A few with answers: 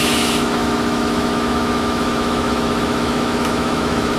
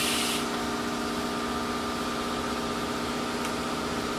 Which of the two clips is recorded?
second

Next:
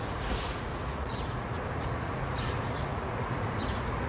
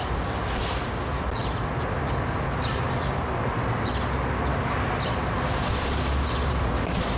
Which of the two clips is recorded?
second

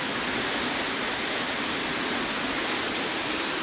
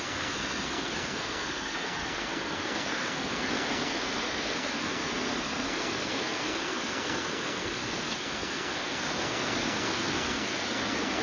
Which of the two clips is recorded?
first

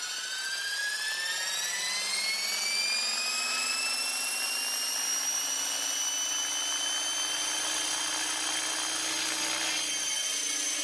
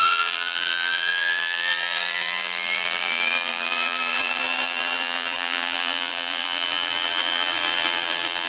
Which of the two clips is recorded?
first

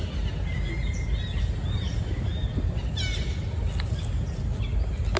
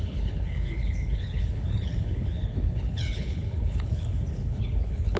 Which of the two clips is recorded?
first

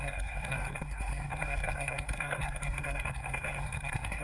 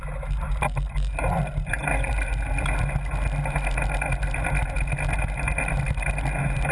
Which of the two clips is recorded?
second